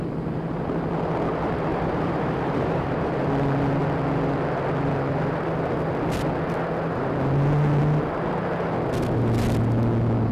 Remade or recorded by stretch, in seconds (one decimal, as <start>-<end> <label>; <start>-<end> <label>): 0.0-1.7 recorded; 1.7-3.3 remade; 3.3-10.3 recorded